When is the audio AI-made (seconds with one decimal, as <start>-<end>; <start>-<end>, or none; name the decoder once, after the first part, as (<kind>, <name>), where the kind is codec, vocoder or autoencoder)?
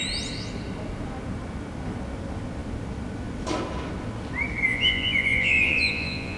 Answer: 4.7-6.4 (vocoder, Vocos)